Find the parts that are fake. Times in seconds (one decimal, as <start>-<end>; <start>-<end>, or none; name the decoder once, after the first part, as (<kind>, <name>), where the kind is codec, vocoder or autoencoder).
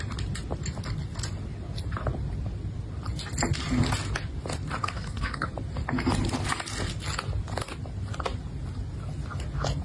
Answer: 4.8-5.5 (codec, SNAC)